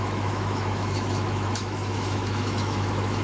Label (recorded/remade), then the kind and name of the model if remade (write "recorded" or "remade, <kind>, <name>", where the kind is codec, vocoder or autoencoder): remade, autoencoder, DAC-VAE